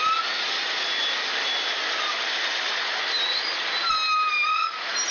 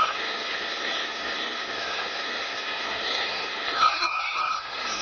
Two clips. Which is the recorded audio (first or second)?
first